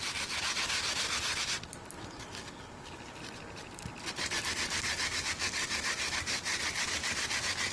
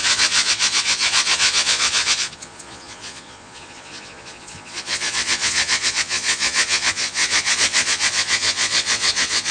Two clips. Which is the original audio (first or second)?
first